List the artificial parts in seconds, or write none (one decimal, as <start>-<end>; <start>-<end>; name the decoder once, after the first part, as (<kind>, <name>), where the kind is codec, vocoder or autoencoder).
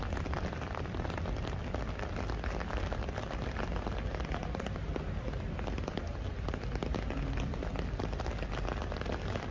none